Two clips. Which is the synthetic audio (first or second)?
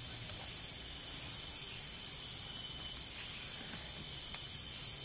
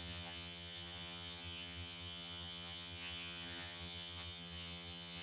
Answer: second